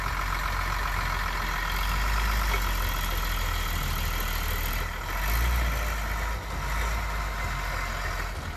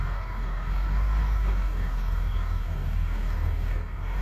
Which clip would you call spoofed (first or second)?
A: second